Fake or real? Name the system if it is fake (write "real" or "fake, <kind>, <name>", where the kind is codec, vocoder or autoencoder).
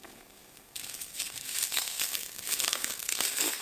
fake, codec, SNAC